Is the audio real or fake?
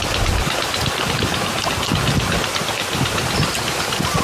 real